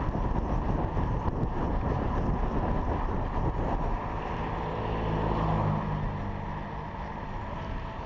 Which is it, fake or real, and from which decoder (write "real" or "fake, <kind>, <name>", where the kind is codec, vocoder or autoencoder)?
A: real